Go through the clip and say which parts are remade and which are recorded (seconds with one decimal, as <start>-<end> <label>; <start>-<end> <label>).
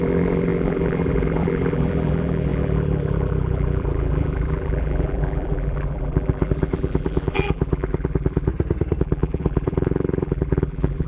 0.0-8.5 remade; 8.5-9.0 recorded; 9.0-11.1 remade